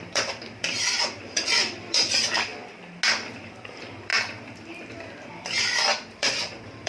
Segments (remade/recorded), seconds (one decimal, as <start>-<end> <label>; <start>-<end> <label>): 0.0-2.5 remade; 2.5-3.4 recorded; 3.4-4.1 remade; 4.1-5.6 recorded; 5.6-6.9 remade